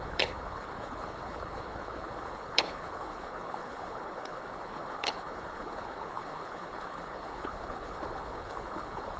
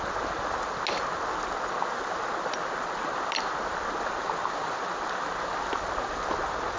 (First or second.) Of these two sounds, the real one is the second